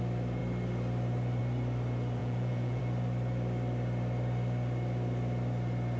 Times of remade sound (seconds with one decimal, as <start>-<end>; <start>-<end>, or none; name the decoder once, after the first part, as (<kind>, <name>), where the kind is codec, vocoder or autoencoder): 2.2-2.8 (vocoder, Vocos)